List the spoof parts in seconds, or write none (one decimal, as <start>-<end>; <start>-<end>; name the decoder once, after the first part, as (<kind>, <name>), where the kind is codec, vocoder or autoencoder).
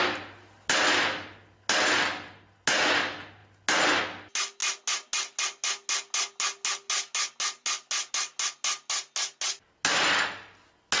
none